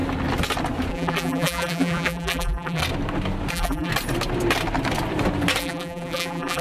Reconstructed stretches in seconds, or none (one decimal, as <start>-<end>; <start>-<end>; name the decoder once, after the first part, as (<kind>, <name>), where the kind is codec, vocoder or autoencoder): 0.9-2.8 (vocoder, BigVGAN v2); 3.5-3.9; 5.6-6.6